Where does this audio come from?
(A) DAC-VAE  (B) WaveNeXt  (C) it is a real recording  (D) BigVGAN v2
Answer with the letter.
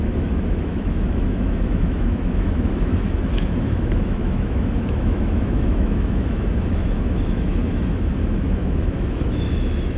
A